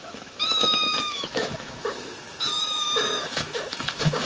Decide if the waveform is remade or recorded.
remade